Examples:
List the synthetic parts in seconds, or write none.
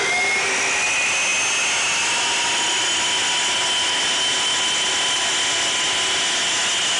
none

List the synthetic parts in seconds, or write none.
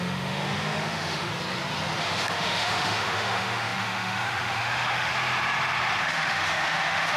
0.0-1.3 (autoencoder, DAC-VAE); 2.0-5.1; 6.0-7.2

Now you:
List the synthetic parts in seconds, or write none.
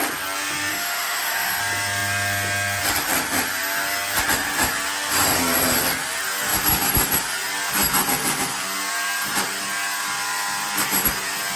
0.7-1.6 (autoencoder, DAC-VAE)